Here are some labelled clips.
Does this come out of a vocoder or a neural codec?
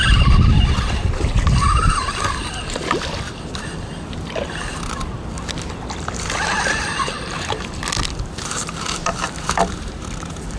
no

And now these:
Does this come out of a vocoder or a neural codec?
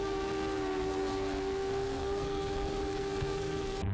yes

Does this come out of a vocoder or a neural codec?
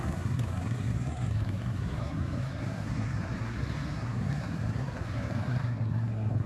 yes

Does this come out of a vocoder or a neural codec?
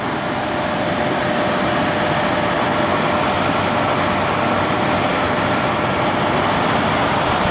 no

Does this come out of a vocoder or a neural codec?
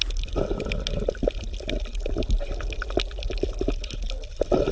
no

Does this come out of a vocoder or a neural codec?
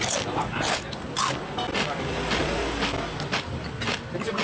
no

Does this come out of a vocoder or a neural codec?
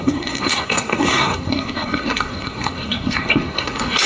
yes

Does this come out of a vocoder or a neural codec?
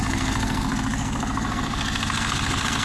yes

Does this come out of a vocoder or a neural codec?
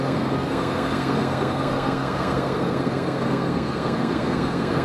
yes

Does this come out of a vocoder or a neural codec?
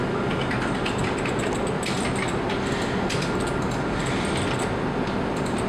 no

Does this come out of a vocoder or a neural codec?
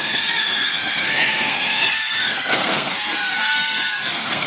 yes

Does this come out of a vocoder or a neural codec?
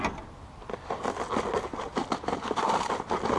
no